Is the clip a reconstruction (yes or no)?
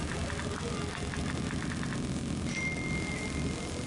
no